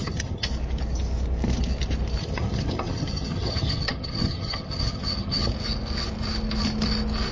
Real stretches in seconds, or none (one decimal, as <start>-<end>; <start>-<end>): 0.5-2.2; 5.5-7.3